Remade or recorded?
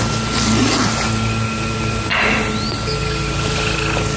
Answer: recorded